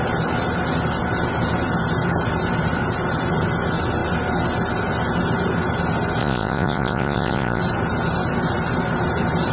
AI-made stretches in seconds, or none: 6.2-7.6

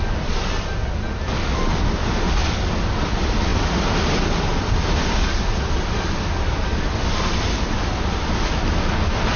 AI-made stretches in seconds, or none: none

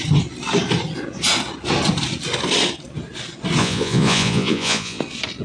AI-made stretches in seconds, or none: 3.6-5.0

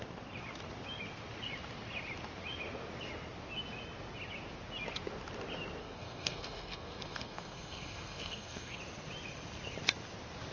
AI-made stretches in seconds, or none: 5.8-8.8

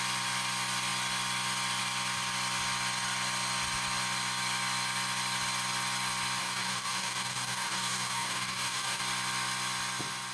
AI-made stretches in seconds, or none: 6.4-9.0

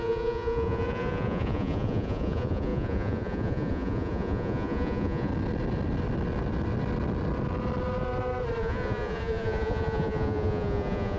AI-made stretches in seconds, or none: 0.0-5.3; 8.6-11.2

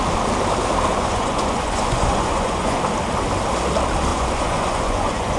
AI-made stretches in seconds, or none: 0.9-2.8; 4.1-5.4

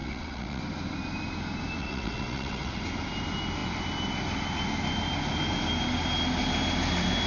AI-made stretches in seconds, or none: 0.0-0.6; 1.8-2.8